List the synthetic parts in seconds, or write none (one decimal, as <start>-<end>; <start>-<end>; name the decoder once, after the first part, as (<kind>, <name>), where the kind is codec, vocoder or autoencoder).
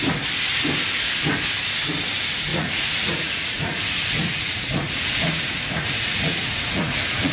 2.5-7.3 (vocoder, Vocos)